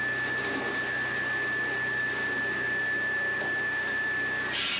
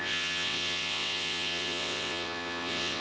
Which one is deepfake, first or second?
second